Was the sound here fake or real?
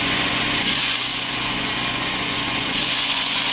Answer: fake